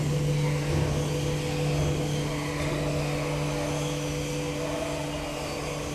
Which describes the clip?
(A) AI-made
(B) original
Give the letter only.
B